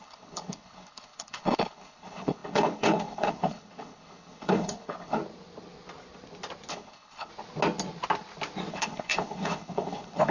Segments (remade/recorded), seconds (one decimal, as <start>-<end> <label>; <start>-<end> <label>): 0.0-5.2 remade; 5.2-6.7 recorded; 6.7-7.3 remade; 7.3-8.7 recorded; 8.7-10.3 remade